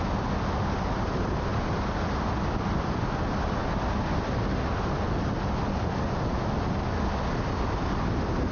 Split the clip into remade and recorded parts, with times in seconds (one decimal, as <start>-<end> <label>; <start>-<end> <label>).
0.0-8.5 recorded